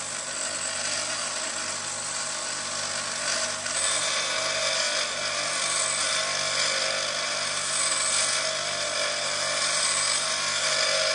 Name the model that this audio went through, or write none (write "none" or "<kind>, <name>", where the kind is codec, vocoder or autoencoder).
none